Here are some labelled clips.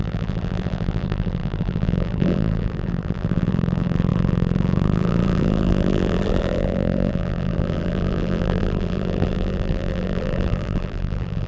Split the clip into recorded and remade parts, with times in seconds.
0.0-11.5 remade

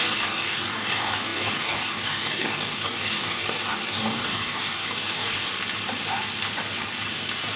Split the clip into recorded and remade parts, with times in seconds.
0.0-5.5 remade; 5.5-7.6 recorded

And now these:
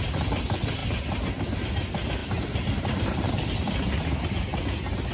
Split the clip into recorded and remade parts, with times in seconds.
0.0-2.2 recorded; 2.2-3.3 remade; 3.3-5.1 recorded

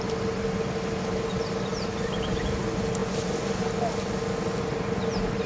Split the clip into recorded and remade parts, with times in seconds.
0.0-5.5 recorded

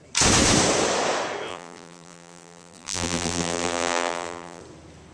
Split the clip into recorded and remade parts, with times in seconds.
0.0-1.5 recorded; 1.5-4.6 remade; 4.6-5.1 recorded